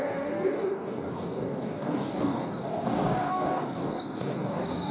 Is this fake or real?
fake